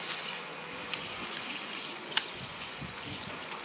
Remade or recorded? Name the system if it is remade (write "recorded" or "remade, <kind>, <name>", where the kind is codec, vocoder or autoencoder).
remade, vocoder, Vocos